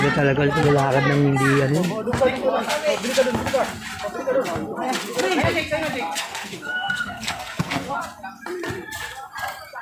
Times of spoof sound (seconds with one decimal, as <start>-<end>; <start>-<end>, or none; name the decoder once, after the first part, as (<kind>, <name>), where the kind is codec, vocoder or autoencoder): 6.2-8.0 (codec, SNAC)